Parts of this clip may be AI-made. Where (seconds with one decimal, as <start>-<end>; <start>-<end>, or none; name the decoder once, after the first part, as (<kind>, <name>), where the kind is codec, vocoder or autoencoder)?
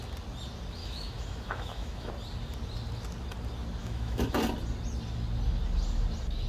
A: 0.8-2.1 (autoencoder, DAC-VAE); 3.8-4.4